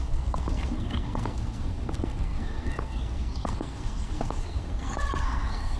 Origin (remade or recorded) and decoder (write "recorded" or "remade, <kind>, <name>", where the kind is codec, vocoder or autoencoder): remade, codec, SNAC